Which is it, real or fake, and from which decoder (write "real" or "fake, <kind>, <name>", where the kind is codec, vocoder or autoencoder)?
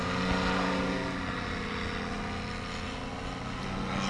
real